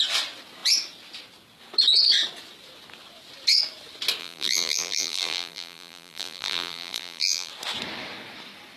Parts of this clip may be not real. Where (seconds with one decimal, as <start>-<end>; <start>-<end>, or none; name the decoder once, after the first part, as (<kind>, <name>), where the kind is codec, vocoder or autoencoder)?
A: 4.2-7.5 (vocoder, BigVGAN v2)